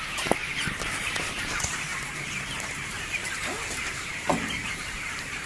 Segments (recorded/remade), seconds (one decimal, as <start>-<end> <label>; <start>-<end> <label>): 0.0-3.2 remade; 3.2-3.9 recorded; 3.9-5.5 remade